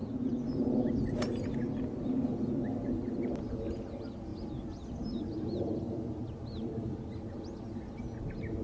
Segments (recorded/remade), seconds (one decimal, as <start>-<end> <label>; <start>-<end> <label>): 0.0-8.6 recorded